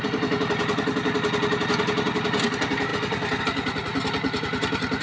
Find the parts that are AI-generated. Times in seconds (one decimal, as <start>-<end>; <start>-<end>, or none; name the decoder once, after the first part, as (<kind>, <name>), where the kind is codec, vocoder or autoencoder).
none